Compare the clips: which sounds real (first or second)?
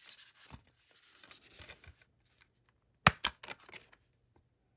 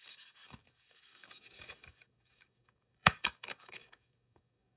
first